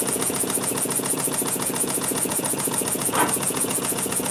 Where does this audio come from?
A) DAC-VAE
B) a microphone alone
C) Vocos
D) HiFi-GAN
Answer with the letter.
C